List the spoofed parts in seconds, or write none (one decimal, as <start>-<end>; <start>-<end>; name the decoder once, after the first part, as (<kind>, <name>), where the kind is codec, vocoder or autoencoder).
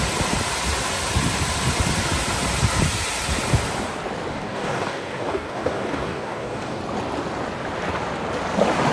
4.3-6.8 (codec, DAC)